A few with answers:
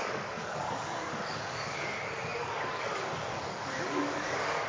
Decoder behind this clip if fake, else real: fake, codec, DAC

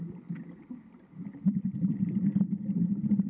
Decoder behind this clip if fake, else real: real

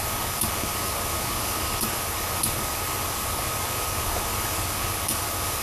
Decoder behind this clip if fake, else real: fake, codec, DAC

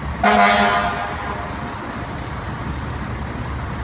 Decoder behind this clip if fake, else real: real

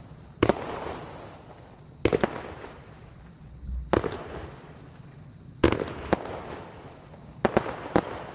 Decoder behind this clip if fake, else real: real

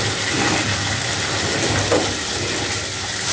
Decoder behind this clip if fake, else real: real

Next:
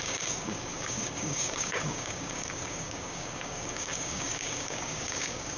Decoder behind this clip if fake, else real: fake, codec, DAC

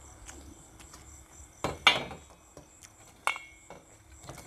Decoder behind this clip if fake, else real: real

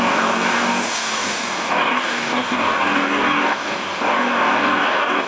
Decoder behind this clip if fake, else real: fake, codec, DAC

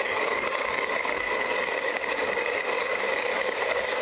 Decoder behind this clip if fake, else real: fake, codec, DAC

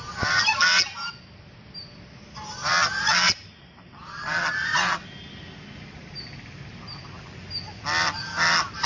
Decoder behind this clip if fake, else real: real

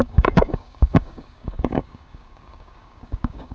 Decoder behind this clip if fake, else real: fake, codec, DAC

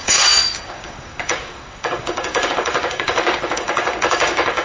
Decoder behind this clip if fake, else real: fake, codec, DAC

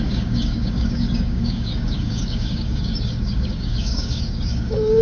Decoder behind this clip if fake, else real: fake, codec, DAC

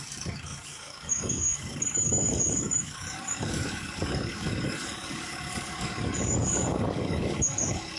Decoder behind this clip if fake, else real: fake, codec, DAC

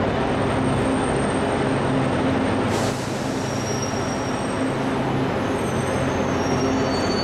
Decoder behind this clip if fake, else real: real